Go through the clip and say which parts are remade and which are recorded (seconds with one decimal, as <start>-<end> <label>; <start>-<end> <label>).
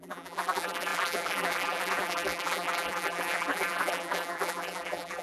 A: 0.0-5.2 remade